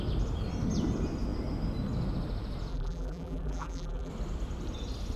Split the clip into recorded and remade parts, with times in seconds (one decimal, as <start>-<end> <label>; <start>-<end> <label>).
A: 0.0-2.7 recorded; 2.7-4.1 remade; 4.1-5.2 recorded